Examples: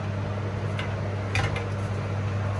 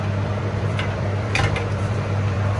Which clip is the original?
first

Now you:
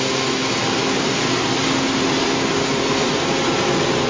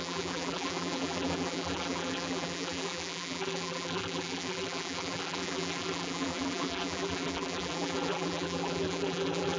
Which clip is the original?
first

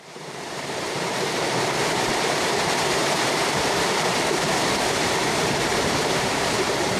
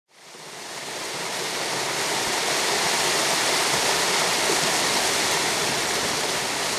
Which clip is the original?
second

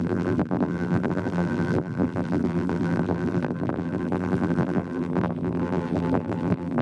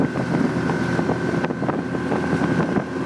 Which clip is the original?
second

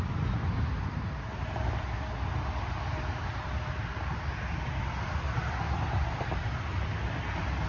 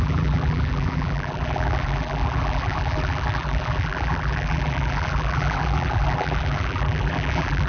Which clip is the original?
first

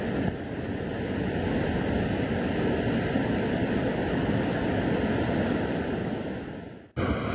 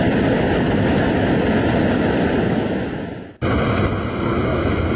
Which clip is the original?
second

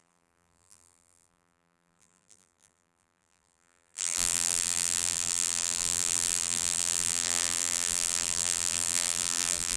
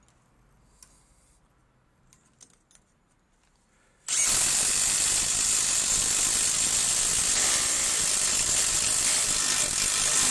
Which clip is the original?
second